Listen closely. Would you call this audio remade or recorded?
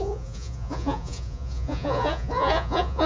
remade